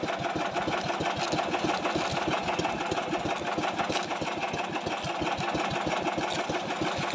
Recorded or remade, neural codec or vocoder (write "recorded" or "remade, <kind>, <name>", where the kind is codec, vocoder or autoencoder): recorded